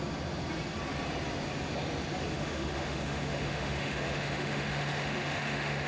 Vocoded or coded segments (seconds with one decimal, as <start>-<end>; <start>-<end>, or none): 2.3-5.9